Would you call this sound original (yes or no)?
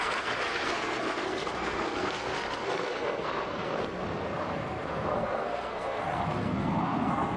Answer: no